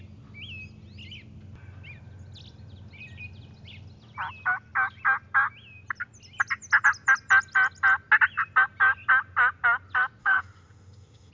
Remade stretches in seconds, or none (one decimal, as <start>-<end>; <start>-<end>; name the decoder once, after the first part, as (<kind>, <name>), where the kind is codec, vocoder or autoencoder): 10.2-11.3 (autoencoder, DAC-VAE)